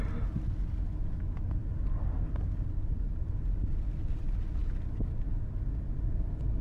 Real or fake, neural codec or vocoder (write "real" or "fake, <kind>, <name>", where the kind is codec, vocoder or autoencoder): real